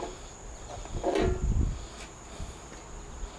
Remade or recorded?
recorded